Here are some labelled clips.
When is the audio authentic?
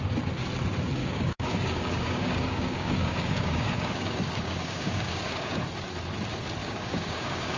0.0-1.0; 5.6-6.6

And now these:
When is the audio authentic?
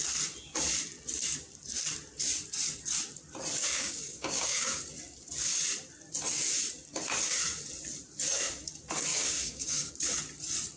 0.0-3.6; 4.8-9.1; 9.9-10.8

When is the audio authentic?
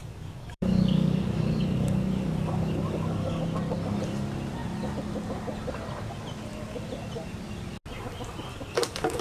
3.4-8.5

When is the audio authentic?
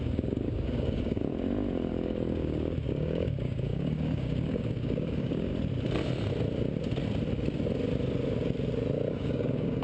1.3-1.9; 5.5-9.1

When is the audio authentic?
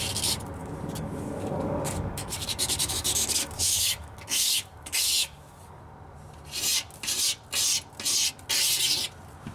0.0-0.6; 5.8-9.5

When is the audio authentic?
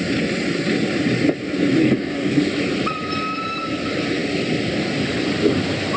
0.0-1.8; 2.4-6.0